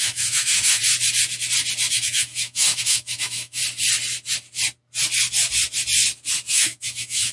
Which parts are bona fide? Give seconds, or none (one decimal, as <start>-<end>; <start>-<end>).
0.8-1.9; 3.6-6.5